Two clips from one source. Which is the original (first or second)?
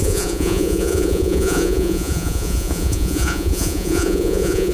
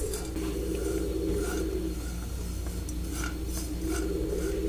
second